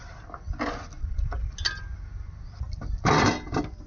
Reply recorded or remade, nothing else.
recorded